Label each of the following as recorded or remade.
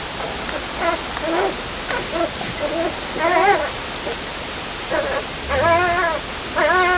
recorded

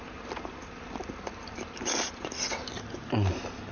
recorded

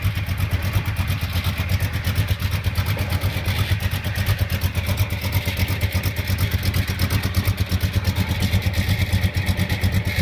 recorded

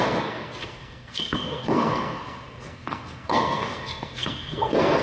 remade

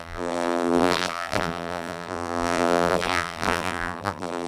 remade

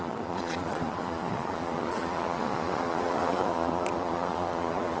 remade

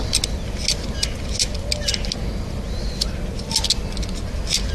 recorded